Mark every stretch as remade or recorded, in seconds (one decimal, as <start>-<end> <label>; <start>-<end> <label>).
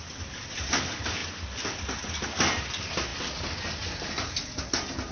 0.0-5.1 recorded